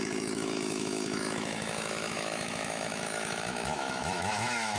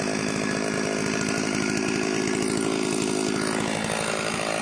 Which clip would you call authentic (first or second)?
second